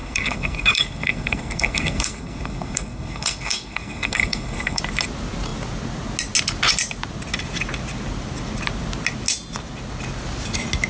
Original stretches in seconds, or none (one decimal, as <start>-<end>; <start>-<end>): 4.8-10.9

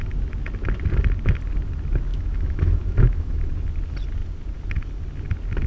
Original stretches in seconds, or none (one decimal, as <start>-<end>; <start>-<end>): 0.0-2.1; 3.4-5.7